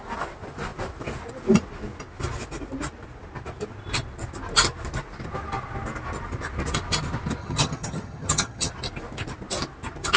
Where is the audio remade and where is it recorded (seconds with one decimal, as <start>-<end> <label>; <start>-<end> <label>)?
0.0-7.4 recorded; 7.4-8.7 remade; 8.7-10.2 recorded